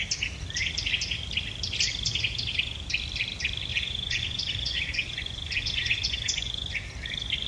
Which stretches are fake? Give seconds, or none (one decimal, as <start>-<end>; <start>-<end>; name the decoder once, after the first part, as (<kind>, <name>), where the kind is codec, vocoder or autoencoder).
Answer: 3.7-6.7 (vocoder, Vocos)